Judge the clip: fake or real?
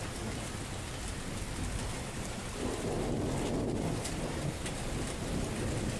real